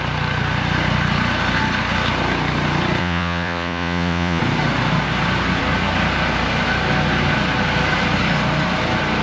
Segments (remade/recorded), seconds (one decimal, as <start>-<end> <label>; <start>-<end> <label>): 0.0-3.0 recorded; 3.0-4.4 remade; 4.4-9.2 recorded